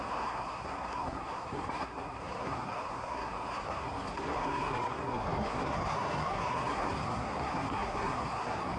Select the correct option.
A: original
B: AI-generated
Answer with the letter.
B